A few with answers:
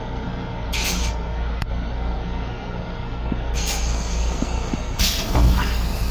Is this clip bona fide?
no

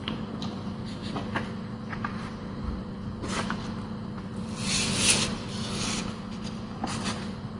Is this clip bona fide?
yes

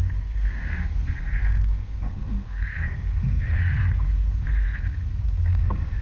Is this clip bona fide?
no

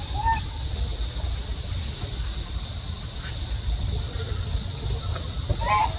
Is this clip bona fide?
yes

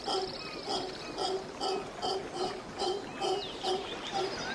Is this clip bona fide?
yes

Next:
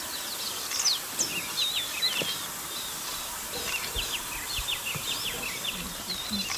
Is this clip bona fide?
yes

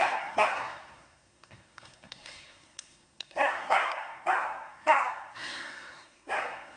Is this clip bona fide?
no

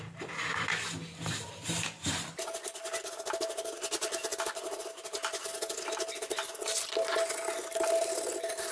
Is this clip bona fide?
yes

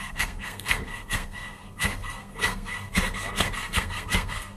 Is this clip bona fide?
no